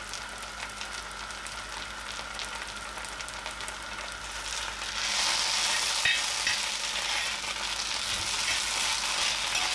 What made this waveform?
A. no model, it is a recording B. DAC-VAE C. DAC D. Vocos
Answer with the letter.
A